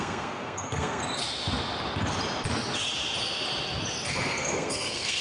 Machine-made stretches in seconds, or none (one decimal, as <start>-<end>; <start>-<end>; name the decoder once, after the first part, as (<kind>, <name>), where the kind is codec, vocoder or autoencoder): 0.0-1.0 (codec, SNAC); 4.1-5.2